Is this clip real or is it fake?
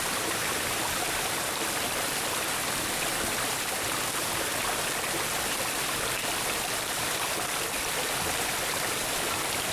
real